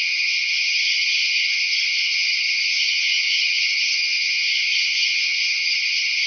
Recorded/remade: remade